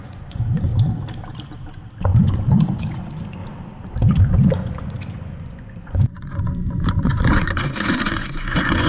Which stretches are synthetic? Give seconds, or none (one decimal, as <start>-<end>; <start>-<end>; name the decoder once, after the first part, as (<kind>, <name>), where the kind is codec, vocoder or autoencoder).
0.0-0.7 (vocoder, Vocos); 2.0-3.4; 4.2-8.9